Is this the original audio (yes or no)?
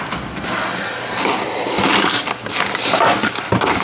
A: yes